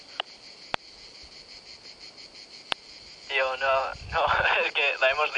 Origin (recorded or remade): recorded